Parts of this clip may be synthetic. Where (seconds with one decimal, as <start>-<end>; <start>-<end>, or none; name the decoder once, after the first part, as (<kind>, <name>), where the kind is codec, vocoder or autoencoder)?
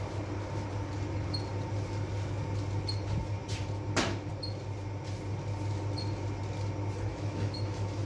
7.1-8.1 (autoencoder, DAC-VAE)